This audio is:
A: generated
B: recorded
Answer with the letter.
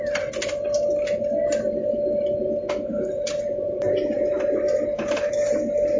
B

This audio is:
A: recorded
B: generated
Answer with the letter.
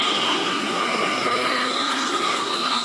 B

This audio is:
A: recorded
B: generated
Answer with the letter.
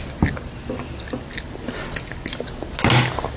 A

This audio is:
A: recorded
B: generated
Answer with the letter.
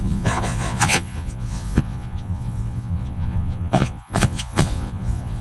B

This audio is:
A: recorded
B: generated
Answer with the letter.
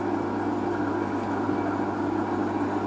A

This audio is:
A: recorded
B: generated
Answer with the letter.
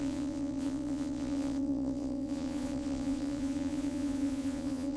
B